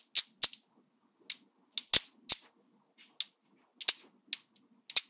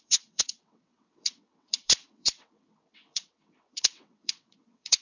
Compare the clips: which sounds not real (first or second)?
second